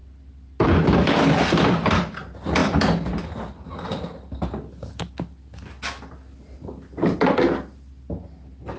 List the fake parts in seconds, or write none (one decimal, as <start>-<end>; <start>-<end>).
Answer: none